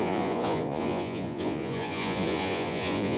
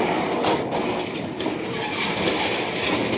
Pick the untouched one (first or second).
second